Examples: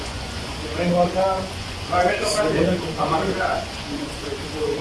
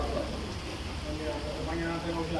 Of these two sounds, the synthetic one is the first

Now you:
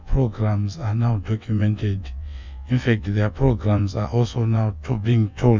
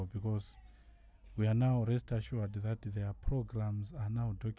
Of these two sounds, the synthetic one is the first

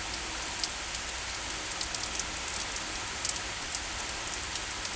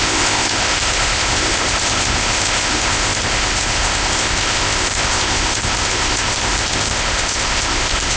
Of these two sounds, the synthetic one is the second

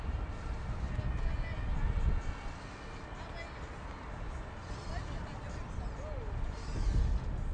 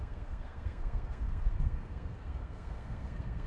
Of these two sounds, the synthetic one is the second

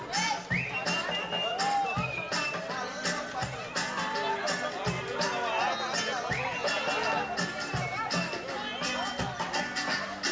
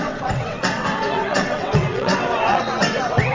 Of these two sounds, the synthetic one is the second